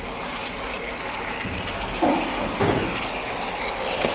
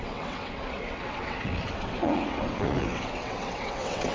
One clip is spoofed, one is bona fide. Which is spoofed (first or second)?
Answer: second